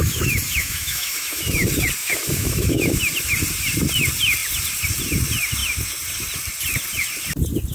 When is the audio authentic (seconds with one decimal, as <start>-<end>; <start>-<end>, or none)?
0.0-0.6; 1.5-2.0; 3.0-7.7